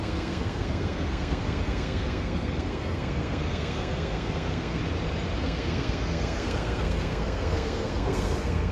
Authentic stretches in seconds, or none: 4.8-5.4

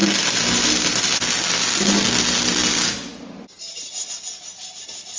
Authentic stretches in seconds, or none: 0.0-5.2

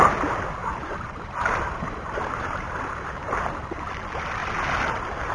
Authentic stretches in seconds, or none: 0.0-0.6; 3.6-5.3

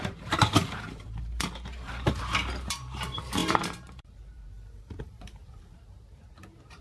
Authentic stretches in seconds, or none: none

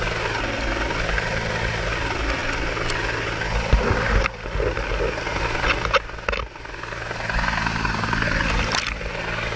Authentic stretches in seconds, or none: 0.0-9.6

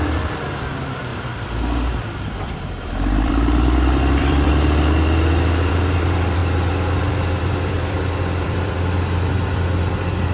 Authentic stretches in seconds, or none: 4.5-5.7; 6.4-7.1

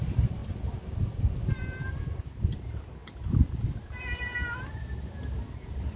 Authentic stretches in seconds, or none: 0.4-1.9; 3.0-5.2

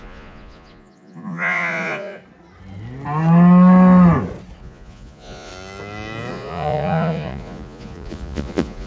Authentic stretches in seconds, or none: 2.2-4.6; 5.5-6.3